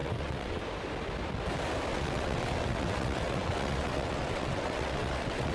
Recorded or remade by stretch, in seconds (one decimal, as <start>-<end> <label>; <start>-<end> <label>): 0.0-0.6 remade; 0.6-1.9 recorded; 1.9-5.5 remade